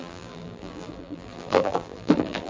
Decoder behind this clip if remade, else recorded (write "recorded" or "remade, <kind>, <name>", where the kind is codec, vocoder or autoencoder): remade, vocoder, BigVGAN v2